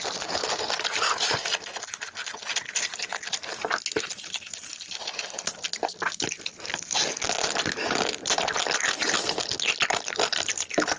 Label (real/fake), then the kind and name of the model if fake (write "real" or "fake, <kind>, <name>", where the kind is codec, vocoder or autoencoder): real